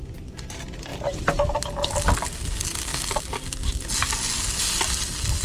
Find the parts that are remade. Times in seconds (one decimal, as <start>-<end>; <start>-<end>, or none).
0.9-1.4